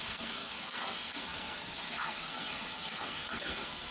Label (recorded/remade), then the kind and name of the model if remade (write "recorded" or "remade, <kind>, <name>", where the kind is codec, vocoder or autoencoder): remade, codec, SNAC